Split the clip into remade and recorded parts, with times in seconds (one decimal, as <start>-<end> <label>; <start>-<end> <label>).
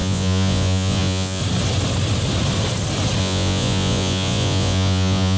0.0-1.4 remade; 1.4-3.2 recorded; 3.2-5.4 remade